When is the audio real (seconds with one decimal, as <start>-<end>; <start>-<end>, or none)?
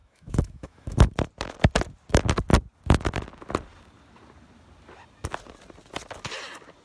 1.1-6.8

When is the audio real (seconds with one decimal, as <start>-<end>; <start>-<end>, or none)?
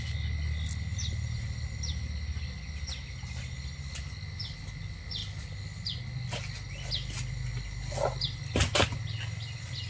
0.0-9.9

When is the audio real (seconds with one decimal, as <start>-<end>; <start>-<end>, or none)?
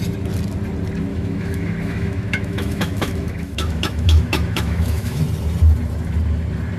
0.0-1.1; 5.2-6.8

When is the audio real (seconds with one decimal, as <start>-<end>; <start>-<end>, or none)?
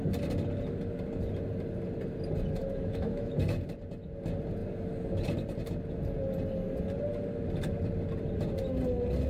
0.0-2.6; 3.3-9.3